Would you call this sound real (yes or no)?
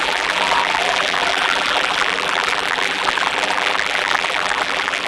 no